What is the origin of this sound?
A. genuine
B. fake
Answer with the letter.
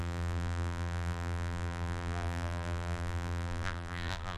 B